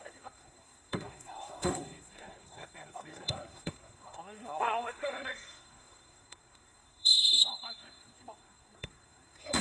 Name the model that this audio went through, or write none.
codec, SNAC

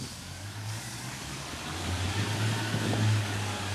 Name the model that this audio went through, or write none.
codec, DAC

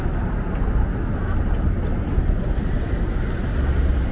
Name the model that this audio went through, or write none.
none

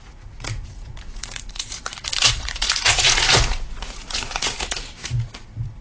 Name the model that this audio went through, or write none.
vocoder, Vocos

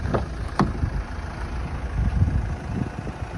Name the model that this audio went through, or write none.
none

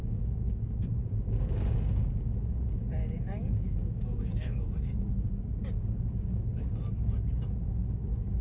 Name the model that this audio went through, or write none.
codec, DAC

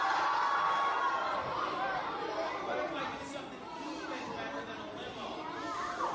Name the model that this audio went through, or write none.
none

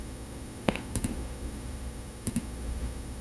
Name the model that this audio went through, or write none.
autoencoder, DAC-VAE